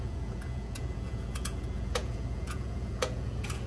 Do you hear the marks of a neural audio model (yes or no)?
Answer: yes